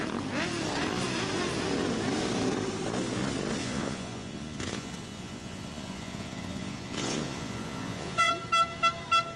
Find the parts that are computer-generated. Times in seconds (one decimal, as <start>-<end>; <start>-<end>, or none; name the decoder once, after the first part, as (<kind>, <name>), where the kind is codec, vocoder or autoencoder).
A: 3.6-8.3 (vocoder, Vocos)